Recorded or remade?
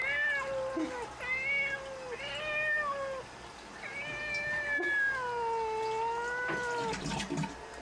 recorded